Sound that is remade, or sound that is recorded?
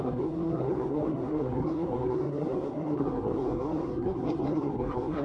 remade